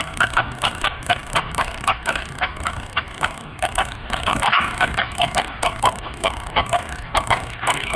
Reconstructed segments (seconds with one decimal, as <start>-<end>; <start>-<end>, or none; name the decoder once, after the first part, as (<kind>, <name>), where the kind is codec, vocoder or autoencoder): 0.0-8.0 (codec, DAC)